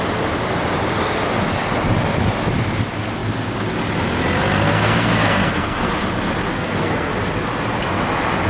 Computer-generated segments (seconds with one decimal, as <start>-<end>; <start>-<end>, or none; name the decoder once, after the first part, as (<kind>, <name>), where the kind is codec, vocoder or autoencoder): 4.7-5.9 (codec, SNAC); 6.5-7.1